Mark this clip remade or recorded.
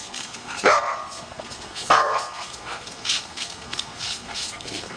remade